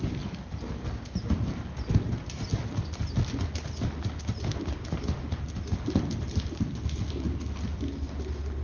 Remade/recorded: recorded